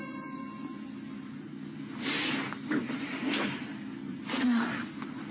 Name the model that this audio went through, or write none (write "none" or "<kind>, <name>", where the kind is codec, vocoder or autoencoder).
none